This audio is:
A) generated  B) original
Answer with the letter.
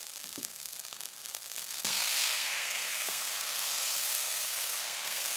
A